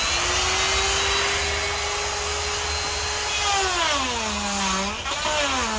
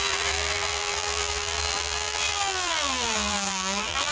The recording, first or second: first